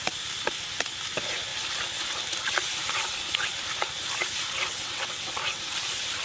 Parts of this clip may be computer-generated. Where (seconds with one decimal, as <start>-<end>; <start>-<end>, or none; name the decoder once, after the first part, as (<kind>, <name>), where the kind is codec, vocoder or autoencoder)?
4.7-5.3 (vocoder, WaveNeXt)